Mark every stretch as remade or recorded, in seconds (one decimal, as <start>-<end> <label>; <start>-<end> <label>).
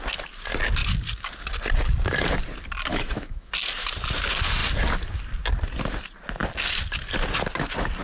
0.0-2.9 recorded; 2.9-3.5 remade; 3.5-8.0 recorded